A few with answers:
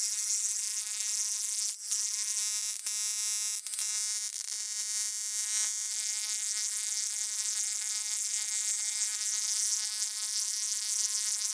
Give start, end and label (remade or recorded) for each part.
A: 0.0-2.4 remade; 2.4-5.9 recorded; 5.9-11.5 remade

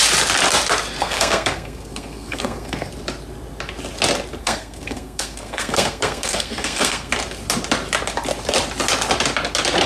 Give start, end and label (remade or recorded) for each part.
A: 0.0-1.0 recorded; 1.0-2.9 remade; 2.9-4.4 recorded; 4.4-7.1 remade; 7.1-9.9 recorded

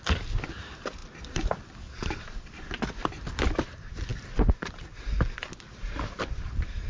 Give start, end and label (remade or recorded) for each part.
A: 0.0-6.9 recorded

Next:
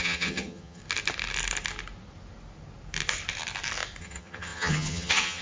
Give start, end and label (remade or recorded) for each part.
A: 0.0-0.8 remade; 0.8-4.0 recorded; 4.0-5.4 remade

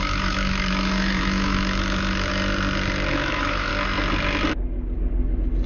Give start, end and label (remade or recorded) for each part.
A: 0.0-2.3 remade; 2.3-3.1 recorded; 3.1-3.7 remade; 3.7-5.7 recorded